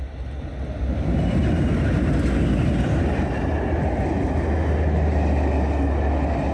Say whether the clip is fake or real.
real